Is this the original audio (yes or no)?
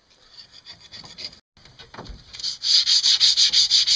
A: yes